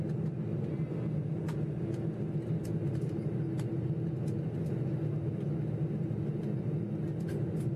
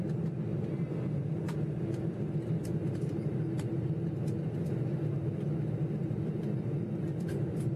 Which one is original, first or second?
first